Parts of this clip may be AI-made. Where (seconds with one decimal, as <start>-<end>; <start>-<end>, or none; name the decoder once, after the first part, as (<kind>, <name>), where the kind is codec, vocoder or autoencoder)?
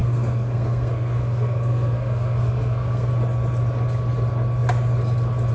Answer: 0.0-3.1 (codec, SNAC)